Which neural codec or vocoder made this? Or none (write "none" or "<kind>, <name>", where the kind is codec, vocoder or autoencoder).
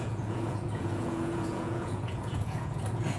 vocoder, Vocos